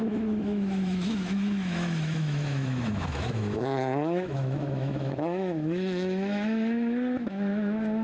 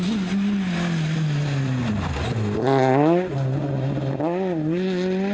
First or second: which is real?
second